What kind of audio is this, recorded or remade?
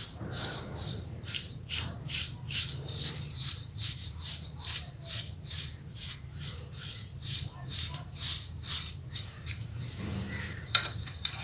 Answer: remade